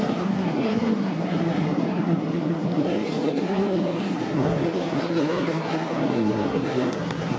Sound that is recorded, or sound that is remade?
remade